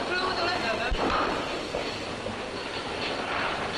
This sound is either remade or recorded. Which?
recorded